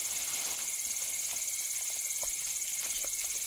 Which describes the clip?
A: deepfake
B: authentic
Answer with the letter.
B